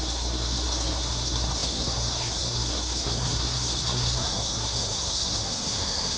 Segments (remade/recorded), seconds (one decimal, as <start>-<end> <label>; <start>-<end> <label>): 0.0-6.2 remade